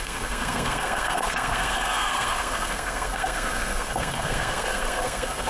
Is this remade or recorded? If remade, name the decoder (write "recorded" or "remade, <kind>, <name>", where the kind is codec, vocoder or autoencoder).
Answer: remade, codec, SNAC